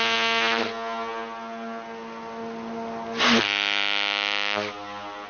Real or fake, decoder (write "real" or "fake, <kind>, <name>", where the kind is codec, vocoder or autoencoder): real